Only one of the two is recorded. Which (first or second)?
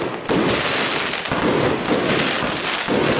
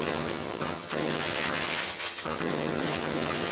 first